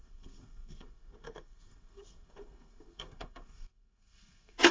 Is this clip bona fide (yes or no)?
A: no